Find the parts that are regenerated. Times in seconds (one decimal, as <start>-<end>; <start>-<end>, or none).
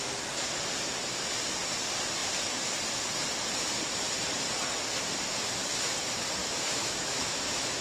6.4-7.8